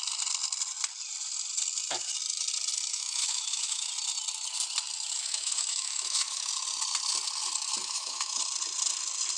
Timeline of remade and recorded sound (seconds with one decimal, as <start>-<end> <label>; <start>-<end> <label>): 0.0-2.9 recorded; 2.9-3.9 remade; 3.9-5.2 recorded; 5.2-6.5 remade; 6.5-7.8 recorded; 7.8-8.4 remade; 8.4-9.4 recorded